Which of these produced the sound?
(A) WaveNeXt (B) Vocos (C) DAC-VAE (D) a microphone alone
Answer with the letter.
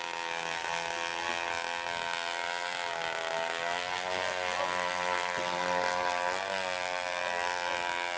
D